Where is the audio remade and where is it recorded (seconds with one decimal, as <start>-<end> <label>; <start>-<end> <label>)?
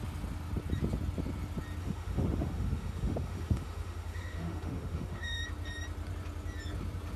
0.0-1.8 recorded; 1.8-5.4 remade; 5.4-7.2 recorded